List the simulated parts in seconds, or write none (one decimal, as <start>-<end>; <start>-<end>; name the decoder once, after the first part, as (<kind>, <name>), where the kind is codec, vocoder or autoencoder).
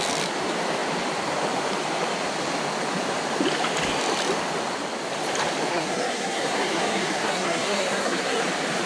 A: 5.7-8.4 (codec, SNAC)